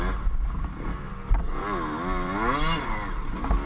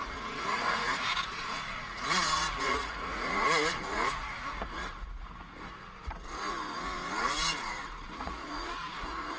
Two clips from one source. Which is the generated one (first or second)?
second